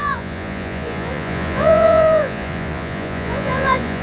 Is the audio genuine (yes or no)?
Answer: no